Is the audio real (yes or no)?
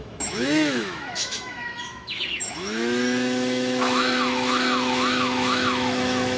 no